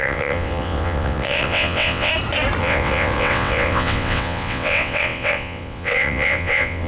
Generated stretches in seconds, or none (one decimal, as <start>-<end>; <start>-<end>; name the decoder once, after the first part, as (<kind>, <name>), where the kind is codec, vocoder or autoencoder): 0.0-2.1 (vocoder, WaveNeXt); 2.6-6.9